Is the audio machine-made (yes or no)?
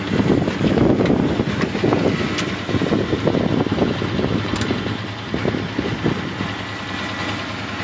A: no